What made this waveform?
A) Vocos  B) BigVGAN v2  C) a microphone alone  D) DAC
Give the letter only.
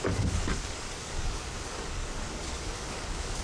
D